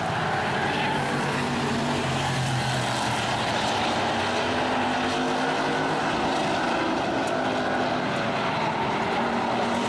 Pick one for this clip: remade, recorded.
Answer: recorded